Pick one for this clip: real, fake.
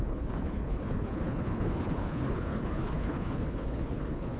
fake